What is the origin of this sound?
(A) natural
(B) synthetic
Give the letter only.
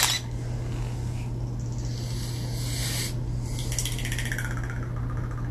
A